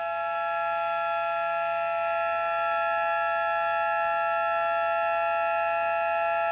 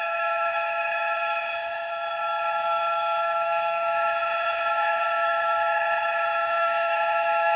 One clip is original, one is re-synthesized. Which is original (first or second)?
first